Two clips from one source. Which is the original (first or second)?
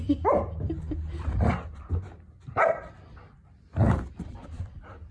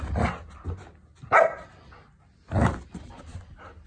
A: second